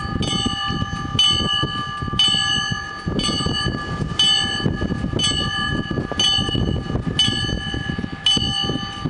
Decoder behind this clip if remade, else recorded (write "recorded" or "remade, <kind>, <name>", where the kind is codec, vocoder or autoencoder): recorded